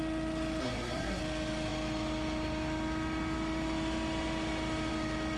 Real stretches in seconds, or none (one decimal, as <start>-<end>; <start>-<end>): 0.0-0.6; 1.2-5.4